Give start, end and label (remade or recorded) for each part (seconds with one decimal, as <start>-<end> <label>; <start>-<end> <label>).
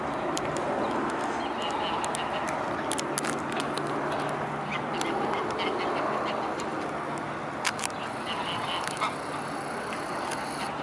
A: 0.0-10.8 recorded